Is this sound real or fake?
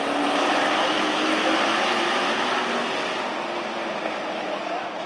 real